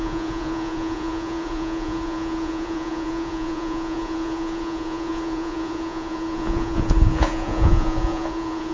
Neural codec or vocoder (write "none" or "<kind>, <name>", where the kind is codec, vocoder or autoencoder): vocoder, Vocos